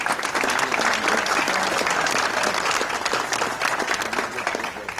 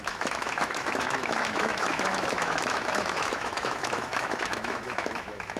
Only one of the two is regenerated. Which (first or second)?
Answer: second